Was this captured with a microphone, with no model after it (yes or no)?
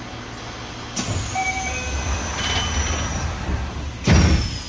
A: yes